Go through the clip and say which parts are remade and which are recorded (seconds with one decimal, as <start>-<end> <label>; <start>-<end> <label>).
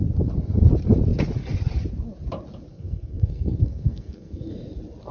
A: 0.0-2.7 recorded; 2.7-4.5 remade; 4.5-5.1 recorded